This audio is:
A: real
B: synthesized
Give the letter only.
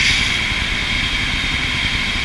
A